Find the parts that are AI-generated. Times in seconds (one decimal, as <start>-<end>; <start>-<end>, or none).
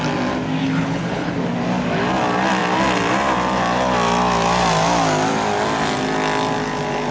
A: 0.6-1.3